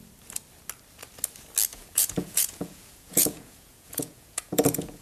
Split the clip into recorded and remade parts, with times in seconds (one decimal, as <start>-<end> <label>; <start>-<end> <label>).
0.0-1.7 recorded; 1.7-5.0 remade